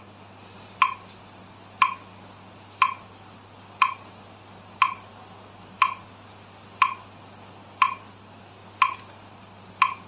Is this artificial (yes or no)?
no